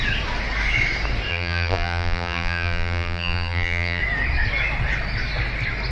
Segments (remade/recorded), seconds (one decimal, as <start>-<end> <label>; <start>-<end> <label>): 0.0-1.3 recorded; 1.3-4.0 remade; 4.0-5.9 recorded